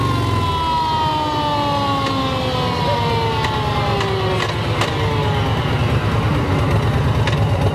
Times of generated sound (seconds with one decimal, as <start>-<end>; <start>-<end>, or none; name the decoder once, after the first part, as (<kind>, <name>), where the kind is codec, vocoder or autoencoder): none

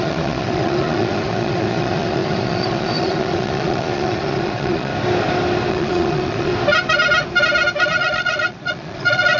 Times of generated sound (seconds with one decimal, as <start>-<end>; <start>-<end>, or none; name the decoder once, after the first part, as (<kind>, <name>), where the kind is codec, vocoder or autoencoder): 0.0-4.9 (vocoder, Vocos); 5.7-6.5; 7.8-9.4

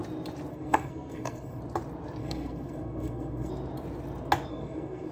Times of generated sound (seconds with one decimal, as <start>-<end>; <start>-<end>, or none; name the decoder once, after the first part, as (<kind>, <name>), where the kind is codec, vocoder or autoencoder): 0.5-1.6 (codec, SNAC); 2.2-3.5; 4.5-5.1

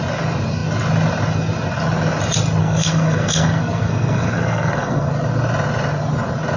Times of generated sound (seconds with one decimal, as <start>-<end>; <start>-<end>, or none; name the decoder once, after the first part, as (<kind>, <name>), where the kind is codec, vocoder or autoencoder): 2.6-5.1 (codec, SNAC)

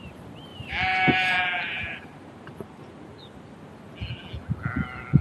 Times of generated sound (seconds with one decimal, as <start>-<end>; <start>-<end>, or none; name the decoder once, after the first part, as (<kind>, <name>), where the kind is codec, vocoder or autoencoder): 0.5-3.6 (vocoder, BigVGAN v2)